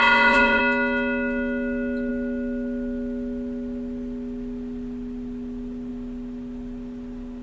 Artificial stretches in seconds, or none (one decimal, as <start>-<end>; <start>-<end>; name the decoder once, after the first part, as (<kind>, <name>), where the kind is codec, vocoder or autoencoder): 0.0-0.6 (vocoder, Vocos)